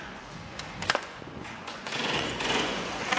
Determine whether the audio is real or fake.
fake